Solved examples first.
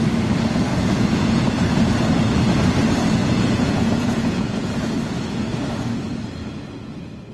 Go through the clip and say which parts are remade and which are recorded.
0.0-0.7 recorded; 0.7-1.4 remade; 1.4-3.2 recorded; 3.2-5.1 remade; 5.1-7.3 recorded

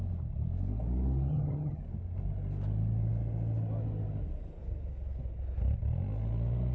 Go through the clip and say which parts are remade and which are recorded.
0.0-1.3 recorded; 1.3-1.8 remade; 1.8-6.7 recorded

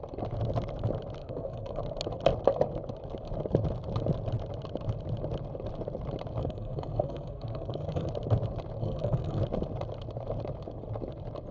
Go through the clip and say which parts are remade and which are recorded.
0.0-1.2 recorded; 1.2-1.8 remade; 1.8-6.4 recorded; 6.4-8.1 remade; 8.1-8.8 recorded; 8.8-9.4 remade; 9.4-11.5 recorded

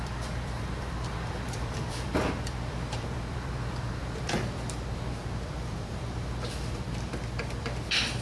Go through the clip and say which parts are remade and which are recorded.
0.0-7.1 remade; 7.1-7.6 recorded; 7.6-8.2 remade

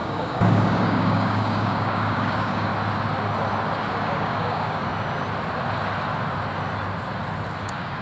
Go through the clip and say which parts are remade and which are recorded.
0.0-2.7 remade; 2.7-3.9 recorded; 3.9-4.9 remade; 4.9-7.6 recorded; 7.6-8.0 remade

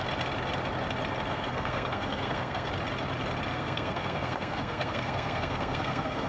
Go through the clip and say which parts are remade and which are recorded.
0.0-1.3 recorded; 1.3-2.7 remade; 2.7-3.5 recorded; 3.5-6.3 remade

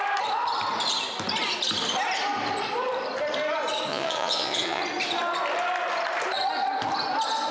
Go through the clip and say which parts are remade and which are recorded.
0.0-3.9 recorded; 3.9-4.8 remade; 4.8-7.5 recorded